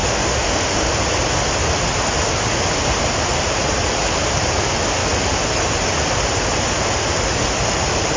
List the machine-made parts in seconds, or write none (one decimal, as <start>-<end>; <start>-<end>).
0.0-0.9